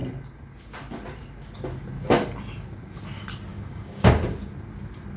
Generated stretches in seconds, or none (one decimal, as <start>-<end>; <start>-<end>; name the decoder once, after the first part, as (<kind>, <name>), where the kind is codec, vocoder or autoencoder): 3.5-4.1 (codec, DAC)